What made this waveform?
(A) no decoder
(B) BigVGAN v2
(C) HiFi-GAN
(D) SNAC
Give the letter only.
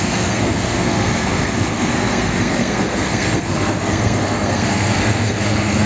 D